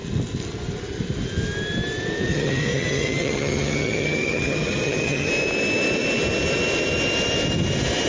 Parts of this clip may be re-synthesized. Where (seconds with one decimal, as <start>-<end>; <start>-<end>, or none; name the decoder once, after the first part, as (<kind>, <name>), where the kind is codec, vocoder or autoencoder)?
2.3-5.3 (vocoder, HiFi-GAN)